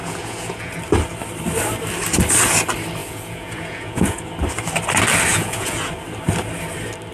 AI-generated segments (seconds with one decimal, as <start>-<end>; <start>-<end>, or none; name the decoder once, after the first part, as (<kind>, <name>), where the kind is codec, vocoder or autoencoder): 0.0-0.8 (vocoder, Vocos); 3.0-4.3; 5.3-5.9

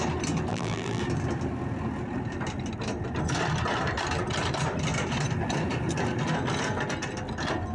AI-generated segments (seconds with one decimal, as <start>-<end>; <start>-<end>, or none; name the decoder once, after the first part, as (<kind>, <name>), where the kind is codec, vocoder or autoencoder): 0.5-1.0 (vocoder, BigVGAN v2)

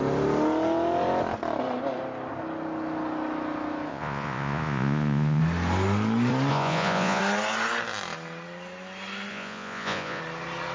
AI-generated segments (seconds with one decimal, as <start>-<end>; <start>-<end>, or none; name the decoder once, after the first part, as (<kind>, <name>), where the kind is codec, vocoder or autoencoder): 3.9-5.4 (vocoder, Vocos); 6.5-7.2; 9.3-10.2

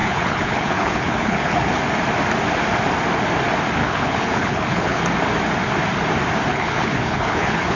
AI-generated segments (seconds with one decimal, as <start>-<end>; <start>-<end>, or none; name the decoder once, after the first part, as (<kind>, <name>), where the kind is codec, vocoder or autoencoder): 0.0-1.8 (codec, HILCodec); 3.8-5.0; 6.5-7.8

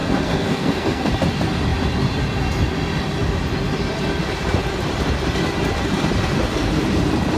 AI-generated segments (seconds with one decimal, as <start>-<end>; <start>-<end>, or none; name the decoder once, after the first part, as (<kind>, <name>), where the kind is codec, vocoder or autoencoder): 0.0-1.1 (codec, SNAC)

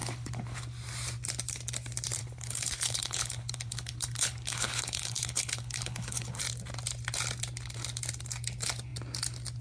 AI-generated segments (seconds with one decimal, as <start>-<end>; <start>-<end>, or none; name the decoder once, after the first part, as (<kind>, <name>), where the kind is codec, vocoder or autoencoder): 0.0-0.6 (codec, HILCodec); 2.2-6.4

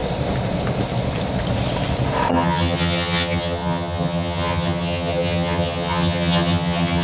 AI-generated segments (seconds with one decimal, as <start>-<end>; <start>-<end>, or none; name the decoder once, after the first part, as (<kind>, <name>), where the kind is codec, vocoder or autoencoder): 2.3-7.0 (vocoder, HiFi-GAN)

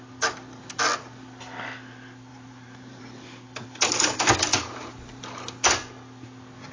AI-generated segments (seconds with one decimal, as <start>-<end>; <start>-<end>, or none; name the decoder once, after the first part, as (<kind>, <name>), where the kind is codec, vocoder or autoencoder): 2.3-3.0 (vocoder, BigVGAN v2); 4.5-5.2